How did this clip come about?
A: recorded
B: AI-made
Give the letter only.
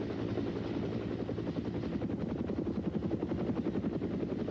A